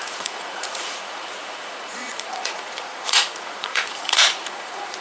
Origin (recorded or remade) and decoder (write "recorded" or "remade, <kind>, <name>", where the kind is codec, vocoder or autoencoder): remade, vocoder, Vocos